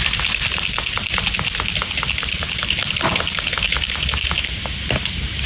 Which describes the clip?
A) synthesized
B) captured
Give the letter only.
B